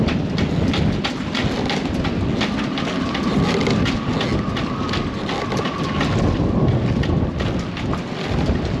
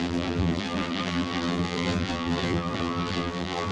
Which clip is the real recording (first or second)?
first